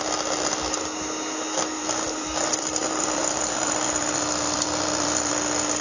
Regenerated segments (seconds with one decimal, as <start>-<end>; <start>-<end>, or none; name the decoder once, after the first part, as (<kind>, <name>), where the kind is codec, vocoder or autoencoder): 1.8-5.3 (vocoder, BigVGAN v2)